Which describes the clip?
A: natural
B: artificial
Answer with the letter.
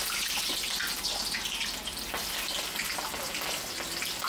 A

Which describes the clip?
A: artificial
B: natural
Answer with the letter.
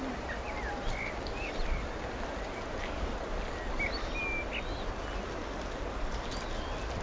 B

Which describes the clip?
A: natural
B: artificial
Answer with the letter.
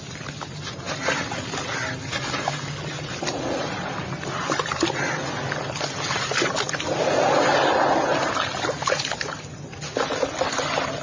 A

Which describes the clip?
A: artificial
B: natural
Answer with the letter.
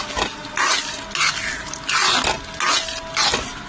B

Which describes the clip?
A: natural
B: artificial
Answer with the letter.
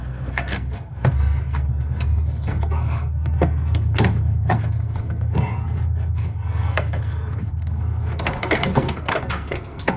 B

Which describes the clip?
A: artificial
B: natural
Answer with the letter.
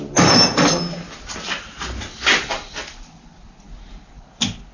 B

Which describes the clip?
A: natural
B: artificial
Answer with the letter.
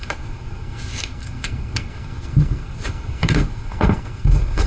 B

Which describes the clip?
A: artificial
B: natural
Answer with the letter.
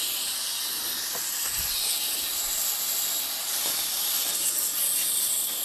B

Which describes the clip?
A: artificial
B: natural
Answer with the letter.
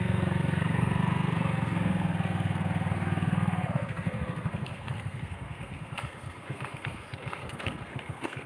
A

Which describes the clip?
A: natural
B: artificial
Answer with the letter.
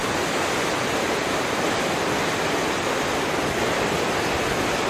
A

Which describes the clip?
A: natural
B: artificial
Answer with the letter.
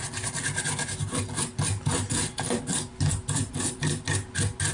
A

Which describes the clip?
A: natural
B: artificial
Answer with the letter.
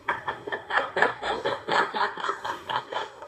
B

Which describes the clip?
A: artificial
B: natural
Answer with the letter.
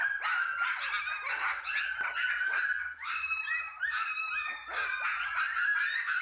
B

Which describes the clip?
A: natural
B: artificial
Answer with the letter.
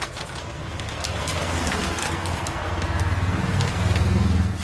B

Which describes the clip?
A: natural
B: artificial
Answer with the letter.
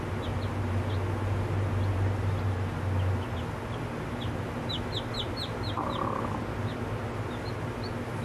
A